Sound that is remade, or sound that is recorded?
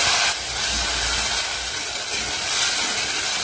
recorded